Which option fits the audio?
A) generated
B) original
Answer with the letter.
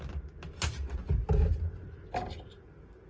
B